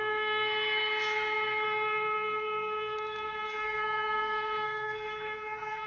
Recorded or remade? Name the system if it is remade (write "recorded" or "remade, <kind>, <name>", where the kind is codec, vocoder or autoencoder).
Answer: remade, codec, SNAC